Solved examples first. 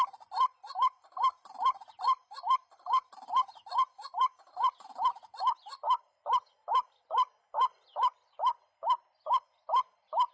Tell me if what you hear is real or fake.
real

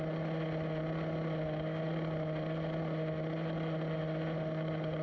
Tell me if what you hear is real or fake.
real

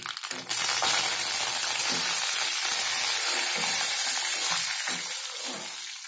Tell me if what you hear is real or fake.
real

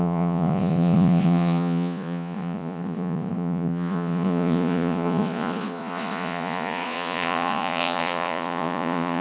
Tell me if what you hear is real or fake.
fake